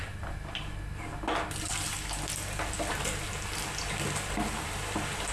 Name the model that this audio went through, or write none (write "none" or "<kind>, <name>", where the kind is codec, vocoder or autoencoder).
none